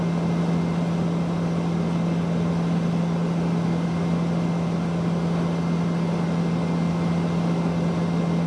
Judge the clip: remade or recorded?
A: recorded